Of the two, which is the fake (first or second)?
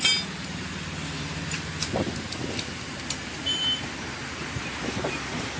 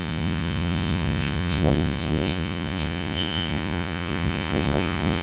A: second